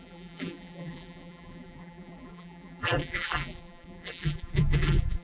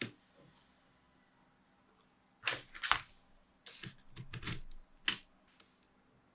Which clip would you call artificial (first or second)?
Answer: first